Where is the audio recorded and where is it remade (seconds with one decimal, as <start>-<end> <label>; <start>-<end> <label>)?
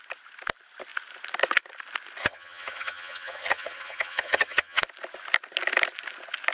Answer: 0.0-2.2 recorded; 2.2-4.8 remade; 4.8-6.5 recorded